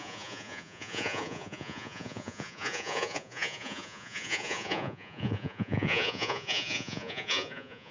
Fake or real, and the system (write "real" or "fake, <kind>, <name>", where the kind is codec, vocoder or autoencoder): fake, vocoder, Vocos